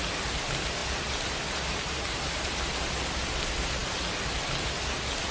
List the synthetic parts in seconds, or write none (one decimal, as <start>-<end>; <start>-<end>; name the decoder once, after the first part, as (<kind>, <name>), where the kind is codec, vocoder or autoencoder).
none